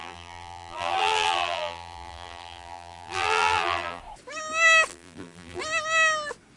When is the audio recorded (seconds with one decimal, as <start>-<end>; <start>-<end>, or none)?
4.0-4.9; 5.6-6.6